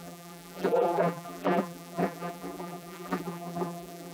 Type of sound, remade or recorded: remade